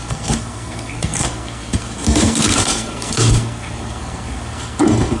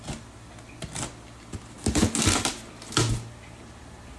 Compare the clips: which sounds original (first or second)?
second